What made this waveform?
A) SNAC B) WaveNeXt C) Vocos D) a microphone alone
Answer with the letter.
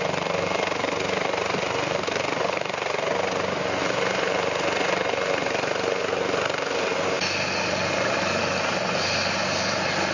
D